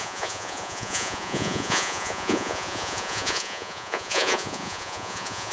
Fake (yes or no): yes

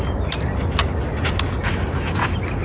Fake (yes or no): no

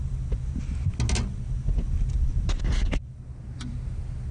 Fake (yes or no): no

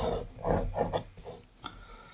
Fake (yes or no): no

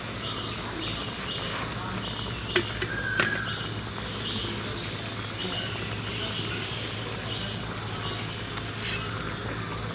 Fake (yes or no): no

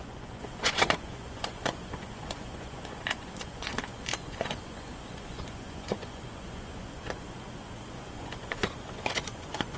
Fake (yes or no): yes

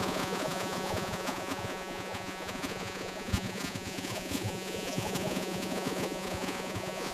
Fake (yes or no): yes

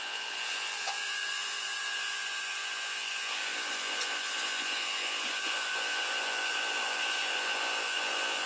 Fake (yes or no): yes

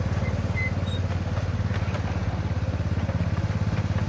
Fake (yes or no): no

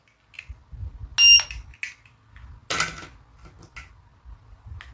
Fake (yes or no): no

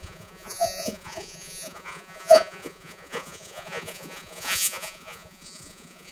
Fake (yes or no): yes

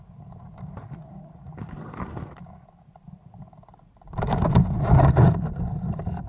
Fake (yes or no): no